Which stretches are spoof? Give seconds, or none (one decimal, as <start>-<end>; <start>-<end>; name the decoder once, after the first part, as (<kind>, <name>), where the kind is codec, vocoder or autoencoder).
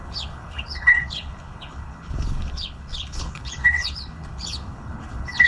0.0-5.5 (codec, HILCodec)